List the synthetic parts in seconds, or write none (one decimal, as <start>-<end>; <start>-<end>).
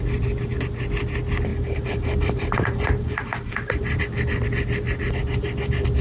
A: 1.5-4.0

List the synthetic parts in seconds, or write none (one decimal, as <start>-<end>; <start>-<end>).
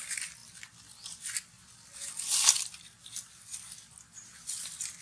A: 0.4-1.9; 3.2-4.5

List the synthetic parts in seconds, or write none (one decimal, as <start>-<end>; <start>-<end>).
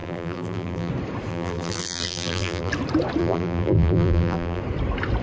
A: 0.0-0.9; 1.3-2.7; 3.2-4.6